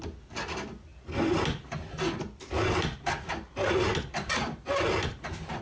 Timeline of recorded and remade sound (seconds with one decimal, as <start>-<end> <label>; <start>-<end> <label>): 0.0-5.6 recorded